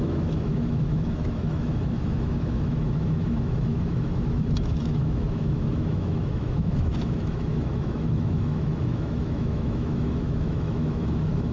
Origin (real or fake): fake